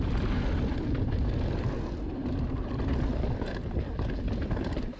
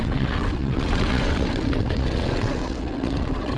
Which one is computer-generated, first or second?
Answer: second